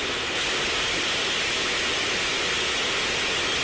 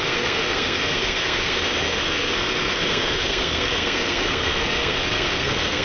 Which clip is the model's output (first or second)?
second